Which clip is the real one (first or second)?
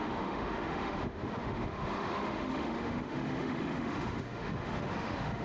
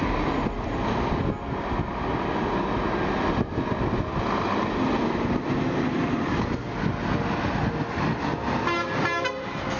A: second